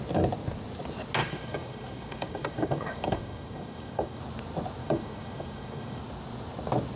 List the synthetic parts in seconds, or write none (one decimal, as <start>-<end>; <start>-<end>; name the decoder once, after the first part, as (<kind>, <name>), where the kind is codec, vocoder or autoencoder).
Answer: 1.2-4.2 (codec, DAC); 4.8-6.0